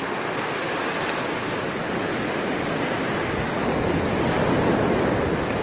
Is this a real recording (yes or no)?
yes